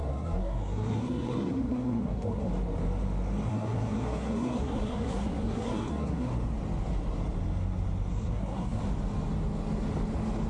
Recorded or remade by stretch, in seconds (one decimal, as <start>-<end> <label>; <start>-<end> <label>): 0.0-2.5 remade; 2.5-3.5 recorded; 3.5-6.3 remade; 6.3-8.1 recorded; 8.1-8.8 remade; 8.8-10.5 recorded